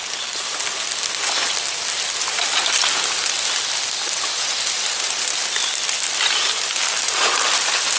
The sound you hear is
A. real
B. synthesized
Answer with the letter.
A